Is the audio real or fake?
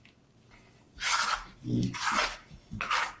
real